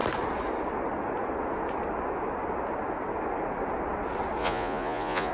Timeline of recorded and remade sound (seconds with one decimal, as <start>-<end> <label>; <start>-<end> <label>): 0.0-4.4 recorded; 4.4-5.3 remade